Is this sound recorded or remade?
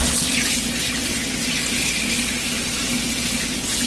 recorded